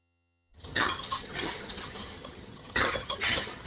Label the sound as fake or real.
fake